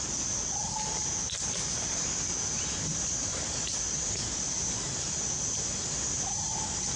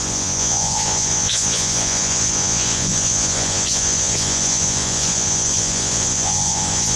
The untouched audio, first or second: first